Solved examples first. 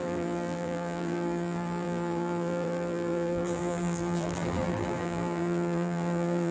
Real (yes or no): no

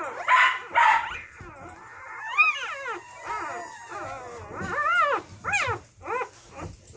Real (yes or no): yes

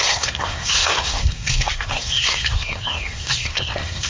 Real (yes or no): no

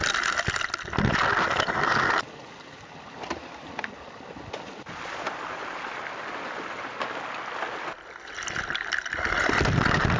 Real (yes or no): yes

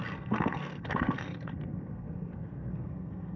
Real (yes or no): no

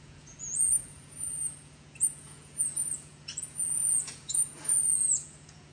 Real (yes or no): no